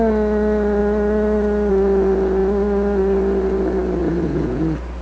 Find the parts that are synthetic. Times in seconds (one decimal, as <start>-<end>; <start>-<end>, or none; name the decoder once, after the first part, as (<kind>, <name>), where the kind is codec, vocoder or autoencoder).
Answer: 4.0-4.6 (vocoder, Vocos)